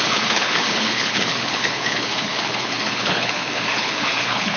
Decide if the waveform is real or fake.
fake